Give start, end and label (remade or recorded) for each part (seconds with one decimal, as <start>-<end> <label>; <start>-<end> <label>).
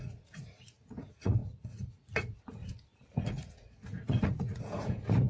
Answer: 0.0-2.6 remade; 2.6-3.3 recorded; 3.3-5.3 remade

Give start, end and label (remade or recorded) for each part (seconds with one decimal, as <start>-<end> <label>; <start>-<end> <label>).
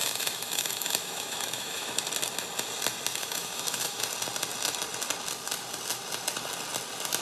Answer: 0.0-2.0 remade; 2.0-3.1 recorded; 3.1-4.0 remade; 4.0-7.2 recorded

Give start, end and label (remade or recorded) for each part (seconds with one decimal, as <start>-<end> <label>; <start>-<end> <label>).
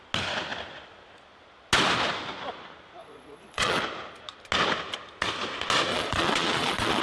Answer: 0.0-3.0 recorded; 3.0-3.8 remade; 3.8-5.9 recorded; 5.9-7.0 remade